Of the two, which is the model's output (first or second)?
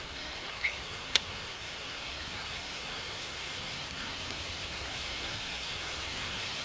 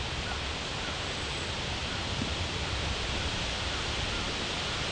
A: first